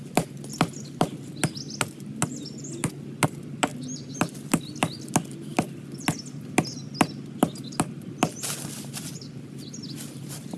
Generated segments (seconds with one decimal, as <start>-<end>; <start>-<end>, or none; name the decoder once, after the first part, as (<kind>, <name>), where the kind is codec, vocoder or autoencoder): none